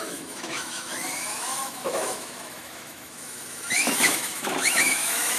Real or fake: fake